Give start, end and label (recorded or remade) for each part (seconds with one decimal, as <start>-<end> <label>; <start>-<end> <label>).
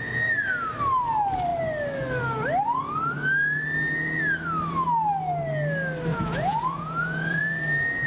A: 0.0-6.1 recorded; 6.1-7.4 remade; 7.4-8.1 recorded